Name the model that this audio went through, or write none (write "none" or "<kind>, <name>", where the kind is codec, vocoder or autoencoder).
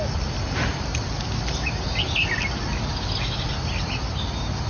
none